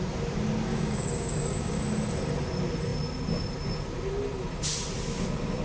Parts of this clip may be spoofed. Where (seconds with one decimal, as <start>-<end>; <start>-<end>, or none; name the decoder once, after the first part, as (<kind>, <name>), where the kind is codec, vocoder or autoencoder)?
0.7-1.8 (codec, DAC)